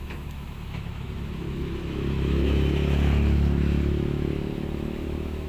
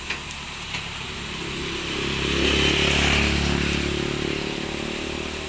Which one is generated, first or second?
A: first